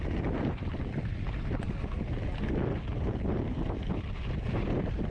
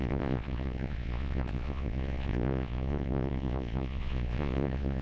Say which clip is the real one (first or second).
first